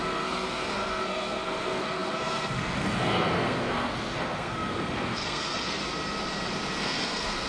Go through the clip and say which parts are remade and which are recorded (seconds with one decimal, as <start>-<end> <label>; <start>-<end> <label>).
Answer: 0.0-5.8 remade; 5.8-6.8 recorded; 6.8-7.5 remade